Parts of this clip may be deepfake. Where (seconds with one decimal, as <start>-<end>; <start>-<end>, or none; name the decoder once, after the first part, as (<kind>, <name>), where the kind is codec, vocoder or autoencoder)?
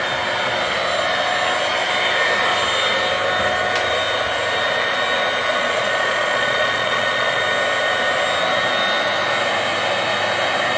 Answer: 5.5-7.4 (vocoder, Vocos)